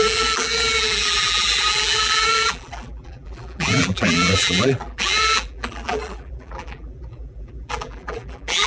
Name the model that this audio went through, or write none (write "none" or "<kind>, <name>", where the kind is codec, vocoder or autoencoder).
vocoder, BigVGAN v2